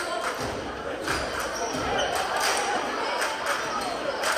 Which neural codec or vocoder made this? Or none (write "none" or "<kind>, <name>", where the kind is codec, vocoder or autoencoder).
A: none